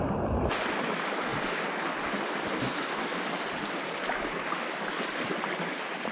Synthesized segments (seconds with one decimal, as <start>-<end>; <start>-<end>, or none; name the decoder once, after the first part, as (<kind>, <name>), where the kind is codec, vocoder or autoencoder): none